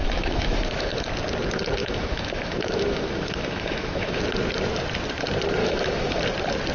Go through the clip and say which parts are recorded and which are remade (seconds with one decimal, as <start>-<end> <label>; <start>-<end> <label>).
0.0-1.0 remade; 1.0-1.8 recorded; 1.8-4.2 remade; 4.2-5.6 recorded; 5.6-6.2 remade; 6.2-6.7 recorded